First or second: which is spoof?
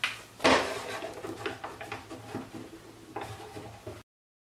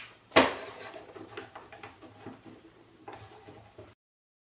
second